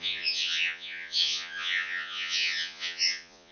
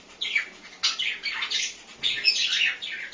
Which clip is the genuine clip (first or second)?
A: second